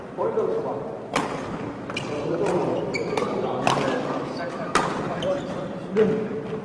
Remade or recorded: remade